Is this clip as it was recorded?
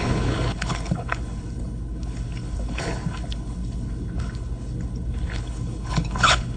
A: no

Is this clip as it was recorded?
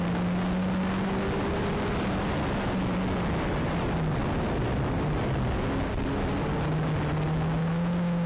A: yes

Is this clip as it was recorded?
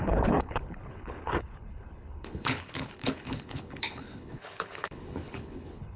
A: no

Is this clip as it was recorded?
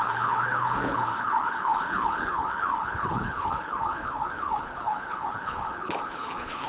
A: no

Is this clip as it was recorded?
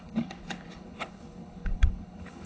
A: no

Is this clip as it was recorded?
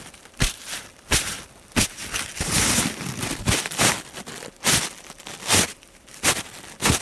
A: yes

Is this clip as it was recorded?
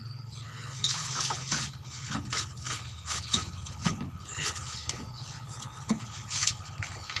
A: no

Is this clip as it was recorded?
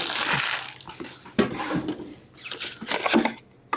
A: yes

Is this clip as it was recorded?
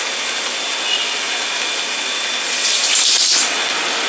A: yes